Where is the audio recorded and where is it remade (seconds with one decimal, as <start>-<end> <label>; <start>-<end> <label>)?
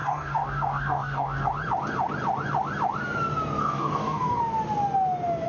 0.0-1.5 remade; 1.5-3.6 recorded; 3.6-4.4 remade; 4.4-5.5 recorded